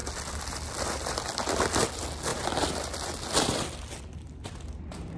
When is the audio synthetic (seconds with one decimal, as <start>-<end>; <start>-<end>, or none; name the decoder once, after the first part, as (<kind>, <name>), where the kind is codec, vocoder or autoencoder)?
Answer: 0.0-1.9 (vocoder, BigVGAN v2); 2.3-4.0